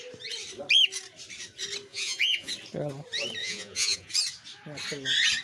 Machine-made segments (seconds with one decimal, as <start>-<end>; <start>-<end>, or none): 1.9-2.5; 3.4-4.1

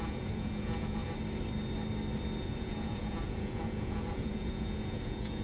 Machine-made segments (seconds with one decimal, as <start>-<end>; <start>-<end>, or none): 0.0-1.0; 2.4-5.4

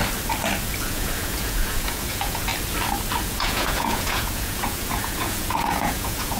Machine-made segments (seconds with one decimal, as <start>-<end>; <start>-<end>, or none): 0.8-2.5; 3.2-6.4

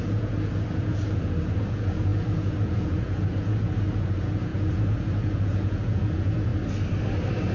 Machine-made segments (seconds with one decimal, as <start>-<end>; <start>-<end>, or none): 0.0-6.5

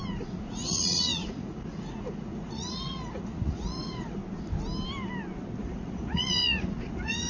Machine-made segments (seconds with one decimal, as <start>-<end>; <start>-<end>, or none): 0.0-4.2; 5.6-7.3